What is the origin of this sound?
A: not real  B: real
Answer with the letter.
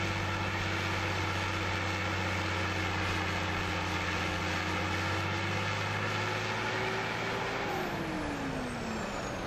B